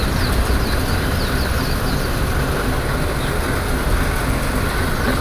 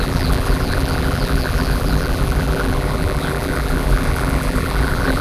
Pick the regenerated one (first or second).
second